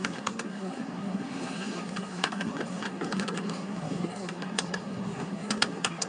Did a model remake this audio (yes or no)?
yes